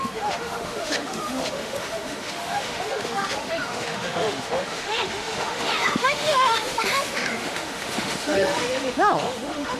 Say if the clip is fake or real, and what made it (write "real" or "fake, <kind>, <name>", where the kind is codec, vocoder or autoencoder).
fake, autoencoder, DAC-VAE